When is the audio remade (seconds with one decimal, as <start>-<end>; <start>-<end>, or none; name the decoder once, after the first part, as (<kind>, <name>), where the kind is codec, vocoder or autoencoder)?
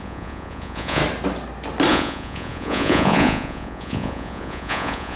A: 0.0-1.0 (vocoder, Vocos); 1.9-5.2